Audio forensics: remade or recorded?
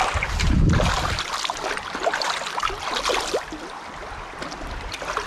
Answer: recorded